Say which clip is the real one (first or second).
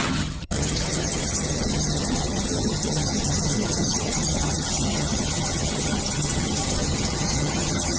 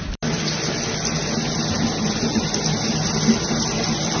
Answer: second